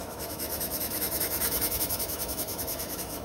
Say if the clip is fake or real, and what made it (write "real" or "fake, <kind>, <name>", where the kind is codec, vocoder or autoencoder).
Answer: fake, autoencoder, DAC-VAE